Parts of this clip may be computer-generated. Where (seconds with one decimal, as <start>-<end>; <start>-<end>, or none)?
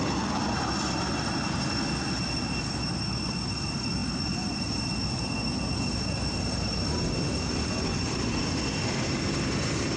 none